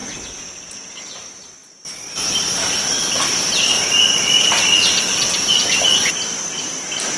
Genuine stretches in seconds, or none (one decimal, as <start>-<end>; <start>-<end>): 1.0-7.2